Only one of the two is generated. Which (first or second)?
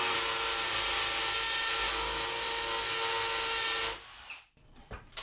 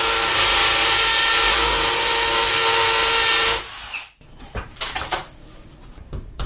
second